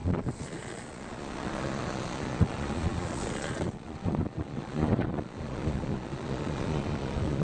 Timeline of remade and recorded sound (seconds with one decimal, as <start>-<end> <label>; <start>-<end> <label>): 0.0-7.4 remade